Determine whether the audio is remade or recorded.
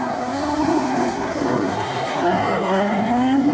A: remade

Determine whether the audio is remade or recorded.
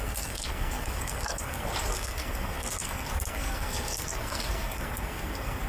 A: remade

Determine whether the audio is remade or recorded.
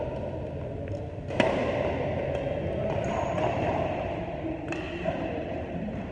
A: recorded